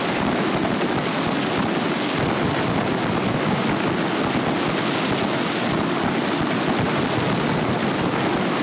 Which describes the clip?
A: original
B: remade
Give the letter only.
A